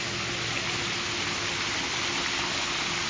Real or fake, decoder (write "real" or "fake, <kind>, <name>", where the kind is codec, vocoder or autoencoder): real